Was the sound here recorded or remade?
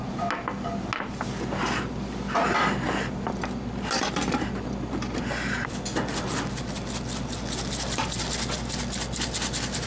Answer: recorded